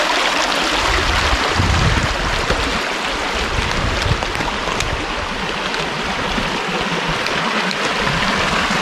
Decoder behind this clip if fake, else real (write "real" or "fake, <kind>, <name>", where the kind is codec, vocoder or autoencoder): real